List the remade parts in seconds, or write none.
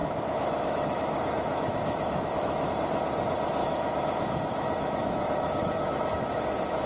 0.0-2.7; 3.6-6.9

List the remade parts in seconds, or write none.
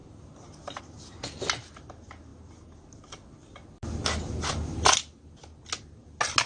none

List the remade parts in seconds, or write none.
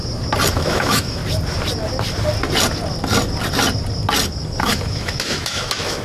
0.5-1.2; 4.6-6.0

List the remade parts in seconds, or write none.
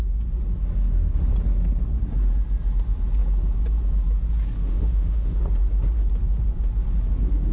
4.6-5.4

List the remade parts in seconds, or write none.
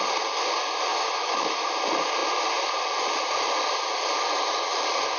0.9-1.6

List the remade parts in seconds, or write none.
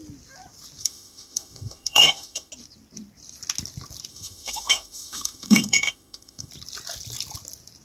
0.8-2.5; 4.1-6.5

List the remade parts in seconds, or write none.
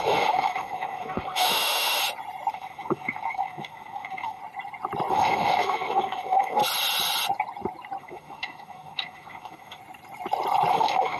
0.0-2.0; 2.5-4.4; 5.1-6.6; 8.0-9.8; 10.7-11.2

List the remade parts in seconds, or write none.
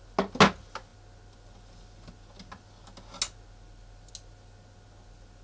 none